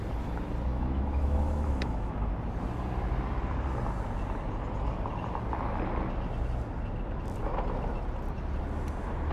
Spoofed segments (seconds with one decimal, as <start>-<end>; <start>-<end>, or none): 0.7-2.3